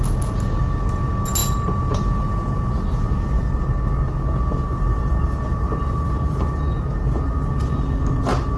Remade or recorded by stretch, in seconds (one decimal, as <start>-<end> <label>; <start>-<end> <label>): 0.0-8.6 recorded